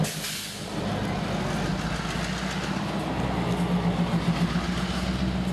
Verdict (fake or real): real